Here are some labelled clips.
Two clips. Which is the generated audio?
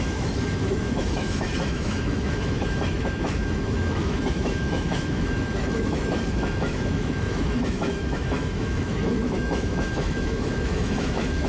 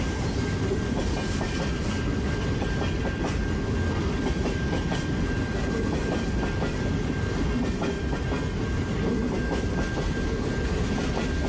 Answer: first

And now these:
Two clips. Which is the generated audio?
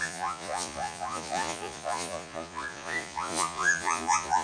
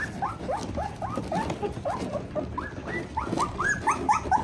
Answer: first